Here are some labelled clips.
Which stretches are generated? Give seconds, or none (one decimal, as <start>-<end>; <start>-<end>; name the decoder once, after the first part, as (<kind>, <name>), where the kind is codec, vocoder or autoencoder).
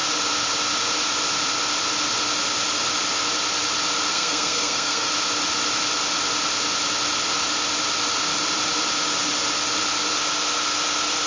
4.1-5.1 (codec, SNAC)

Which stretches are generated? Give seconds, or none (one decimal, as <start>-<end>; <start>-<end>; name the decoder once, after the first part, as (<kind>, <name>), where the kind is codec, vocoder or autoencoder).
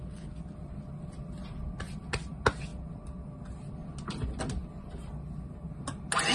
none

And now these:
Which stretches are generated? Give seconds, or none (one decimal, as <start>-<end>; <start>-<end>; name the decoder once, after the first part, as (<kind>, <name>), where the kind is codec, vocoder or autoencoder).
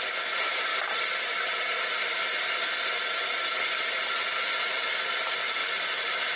none